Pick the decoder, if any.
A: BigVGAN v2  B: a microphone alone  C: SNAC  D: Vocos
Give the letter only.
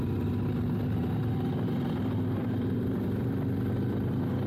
B